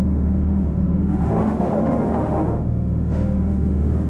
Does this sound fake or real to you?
fake